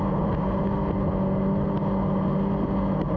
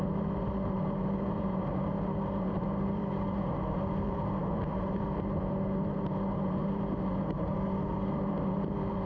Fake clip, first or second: second